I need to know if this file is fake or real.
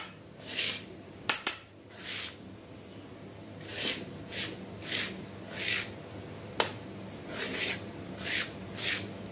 real